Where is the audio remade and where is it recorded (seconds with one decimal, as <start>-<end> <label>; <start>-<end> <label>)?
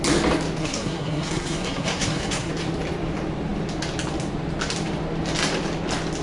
0.0-0.6 recorded; 0.6-2.5 remade; 2.5-6.2 recorded